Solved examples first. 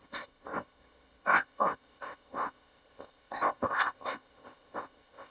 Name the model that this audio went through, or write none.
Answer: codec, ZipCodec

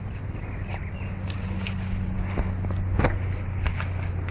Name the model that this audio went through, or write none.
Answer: none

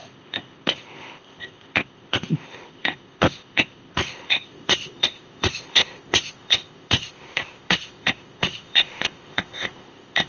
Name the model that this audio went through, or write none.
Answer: codec, ZipCodec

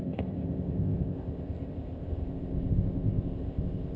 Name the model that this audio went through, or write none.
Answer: codec, ZipCodec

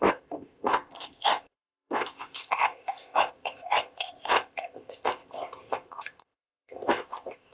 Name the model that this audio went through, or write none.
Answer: codec, ZipCodec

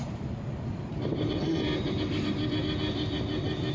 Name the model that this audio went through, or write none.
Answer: none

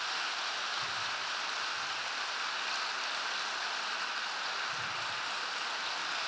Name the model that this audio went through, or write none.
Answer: none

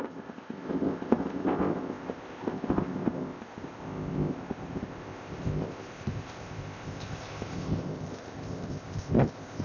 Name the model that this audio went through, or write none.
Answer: codec, ZipCodec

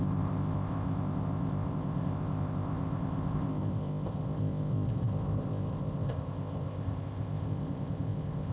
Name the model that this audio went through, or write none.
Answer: codec, ZipCodec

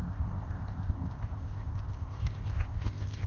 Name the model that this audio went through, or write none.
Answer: codec, ZipCodec